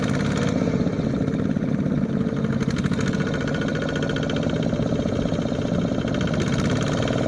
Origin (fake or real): real